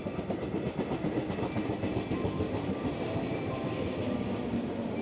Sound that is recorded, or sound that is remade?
recorded